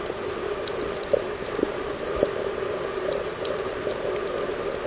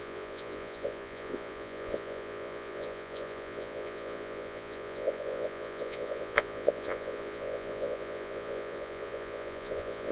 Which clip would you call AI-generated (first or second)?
second